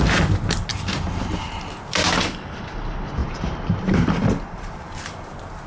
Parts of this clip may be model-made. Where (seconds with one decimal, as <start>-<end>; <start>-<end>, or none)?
0.7-1.6; 3.2-4.8